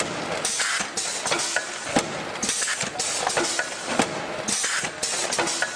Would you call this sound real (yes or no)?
yes